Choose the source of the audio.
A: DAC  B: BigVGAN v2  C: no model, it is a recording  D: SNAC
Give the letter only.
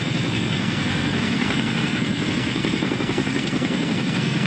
D